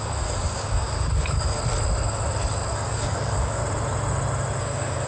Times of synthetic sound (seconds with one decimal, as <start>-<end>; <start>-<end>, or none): 0.0-1.6; 2.7-3.6; 4.6-5.1